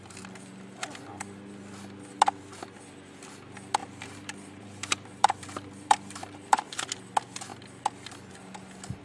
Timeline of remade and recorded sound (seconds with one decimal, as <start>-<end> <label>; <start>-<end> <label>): 0.0-3.8 recorded; 3.8-6.8 remade; 6.8-9.0 recorded